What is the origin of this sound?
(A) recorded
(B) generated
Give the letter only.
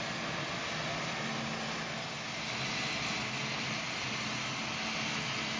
A